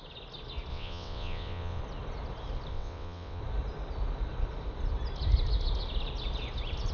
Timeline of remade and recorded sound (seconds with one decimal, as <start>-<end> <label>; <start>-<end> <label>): 0.0-0.7 recorded; 0.7-1.8 remade; 1.8-2.7 recorded; 2.7-3.4 remade; 3.4-6.9 recorded